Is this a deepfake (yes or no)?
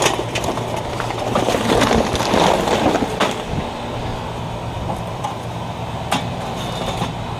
yes